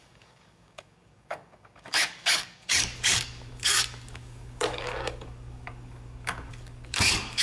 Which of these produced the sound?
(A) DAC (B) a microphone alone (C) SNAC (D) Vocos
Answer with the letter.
A